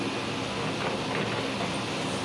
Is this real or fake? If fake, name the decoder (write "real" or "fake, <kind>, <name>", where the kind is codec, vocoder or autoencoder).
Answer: real